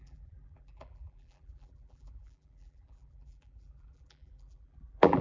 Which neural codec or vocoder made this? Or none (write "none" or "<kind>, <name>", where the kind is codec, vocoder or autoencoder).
vocoder, BigVGAN v2